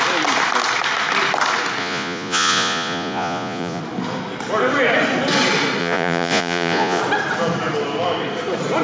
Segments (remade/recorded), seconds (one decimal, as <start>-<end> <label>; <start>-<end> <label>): 0.0-1.8 recorded; 1.8-3.8 remade; 3.8-5.8 recorded; 5.8-7.0 remade; 7.0-8.8 recorded